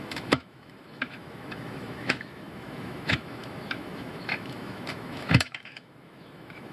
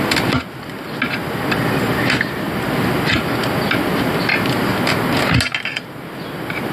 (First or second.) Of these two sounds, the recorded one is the second